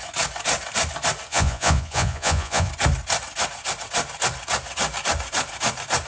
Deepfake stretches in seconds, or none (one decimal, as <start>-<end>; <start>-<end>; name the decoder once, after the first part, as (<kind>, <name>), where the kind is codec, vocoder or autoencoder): 1.3-2.7 (vocoder, Vocos)